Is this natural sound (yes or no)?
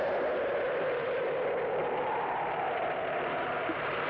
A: yes